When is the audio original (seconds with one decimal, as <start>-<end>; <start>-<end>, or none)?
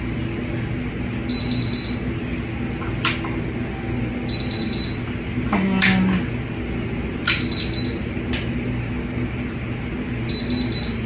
0.0-11.1